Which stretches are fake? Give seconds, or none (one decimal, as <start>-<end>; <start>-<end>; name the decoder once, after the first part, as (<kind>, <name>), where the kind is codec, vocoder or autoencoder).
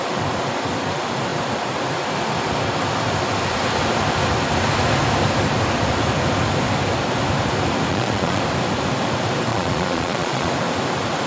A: 7.9-8.4 (vocoder, Vocos); 9.5-10.5